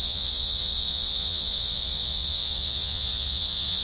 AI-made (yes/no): yes